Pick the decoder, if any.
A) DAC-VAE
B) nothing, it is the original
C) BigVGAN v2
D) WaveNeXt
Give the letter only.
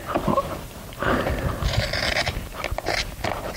B